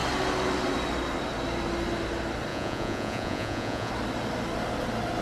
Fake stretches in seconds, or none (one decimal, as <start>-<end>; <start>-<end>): 2.5-3.9